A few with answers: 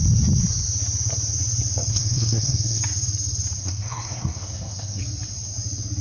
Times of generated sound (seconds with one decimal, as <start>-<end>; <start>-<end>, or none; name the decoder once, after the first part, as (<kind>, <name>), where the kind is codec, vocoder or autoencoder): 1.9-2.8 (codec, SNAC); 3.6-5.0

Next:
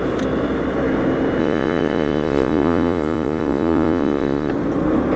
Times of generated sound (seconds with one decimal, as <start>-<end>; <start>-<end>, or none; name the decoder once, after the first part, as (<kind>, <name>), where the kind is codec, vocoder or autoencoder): 1.4-4.5 (vocoder, Vocos)

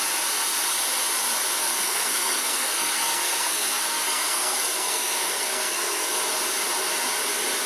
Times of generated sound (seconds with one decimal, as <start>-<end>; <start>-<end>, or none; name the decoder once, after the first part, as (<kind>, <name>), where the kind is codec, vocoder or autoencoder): 1.6-6.2 (codec, SNAC)

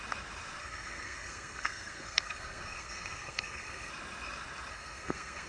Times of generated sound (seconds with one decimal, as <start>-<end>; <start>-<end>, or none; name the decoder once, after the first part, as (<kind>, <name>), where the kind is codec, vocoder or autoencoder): 0.6-3.9 (codec, SNAC); 4.7-5.5

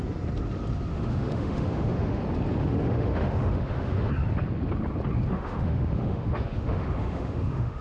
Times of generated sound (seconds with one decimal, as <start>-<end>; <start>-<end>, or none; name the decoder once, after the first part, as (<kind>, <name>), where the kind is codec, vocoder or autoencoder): 0.9-2.2 (autoencoder, DAC-VAE); 2.6-4.1; 5.3-7.8

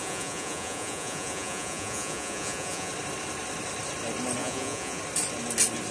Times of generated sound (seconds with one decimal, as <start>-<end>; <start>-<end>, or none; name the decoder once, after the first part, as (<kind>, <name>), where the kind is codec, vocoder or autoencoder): 0.0-2.9 (vocoder, Vocos); 4.4-5.0